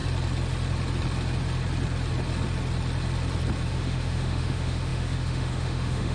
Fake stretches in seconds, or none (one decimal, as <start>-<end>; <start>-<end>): 3.7-6.1